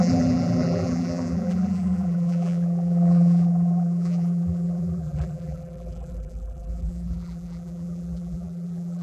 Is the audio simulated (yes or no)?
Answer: yes